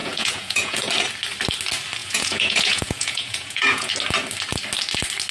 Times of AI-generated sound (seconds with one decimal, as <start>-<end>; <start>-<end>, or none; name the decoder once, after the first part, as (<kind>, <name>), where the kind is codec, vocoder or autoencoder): 0.0-0.9 (vocoder, Vocos); 2.0-3.9